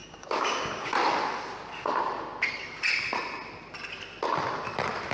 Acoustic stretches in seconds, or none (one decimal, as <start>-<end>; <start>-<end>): 0.9-5.1